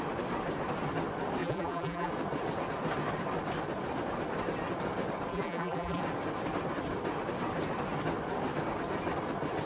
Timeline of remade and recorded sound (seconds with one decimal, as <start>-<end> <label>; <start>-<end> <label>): 0.0-1.4 recorded; 1.4-2.1 remade; 2.1-5.3 recorded; 5.3-6.0 remade; 6.0-9.7 recorded